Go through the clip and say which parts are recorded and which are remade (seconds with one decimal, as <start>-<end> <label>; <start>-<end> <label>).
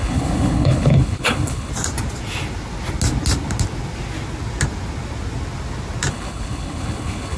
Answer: 0.0-1.7 remade; 1.7-6.1 recorded; 6.1-7.4 remade